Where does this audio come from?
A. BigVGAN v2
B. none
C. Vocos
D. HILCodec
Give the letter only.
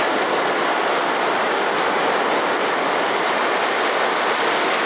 A